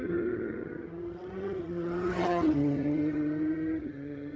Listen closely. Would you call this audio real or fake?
fake